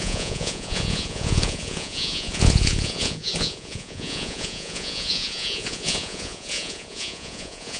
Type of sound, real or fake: fake